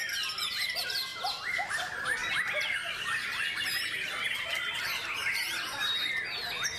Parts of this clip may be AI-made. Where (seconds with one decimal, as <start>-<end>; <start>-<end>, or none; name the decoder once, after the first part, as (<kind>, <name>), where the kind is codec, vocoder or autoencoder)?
2.2-6.1 (vocoder, BigVGAN v2)